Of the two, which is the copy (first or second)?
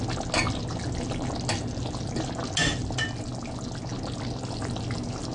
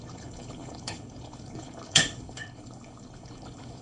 second